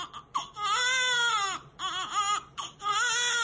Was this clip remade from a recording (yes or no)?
no